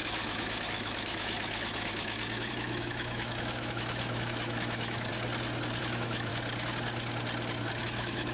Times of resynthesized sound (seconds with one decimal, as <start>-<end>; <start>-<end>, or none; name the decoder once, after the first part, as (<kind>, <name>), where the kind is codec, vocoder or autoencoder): 0.0-5.1 (autoencoder, DAC-VAE); 5.8-6.3; 7.8-8.3